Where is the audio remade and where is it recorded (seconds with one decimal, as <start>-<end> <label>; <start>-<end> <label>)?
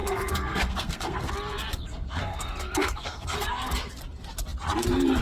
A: 0.0-1.3 remade; 1.3-1.8 recorded; 1.8-3.7 remade; 3.7-5.2 recorded